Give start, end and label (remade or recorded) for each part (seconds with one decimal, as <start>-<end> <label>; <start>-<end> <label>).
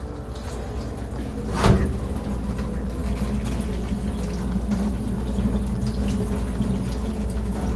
0.0-7.8 recorded